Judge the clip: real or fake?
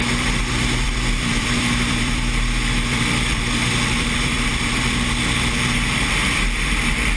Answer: fake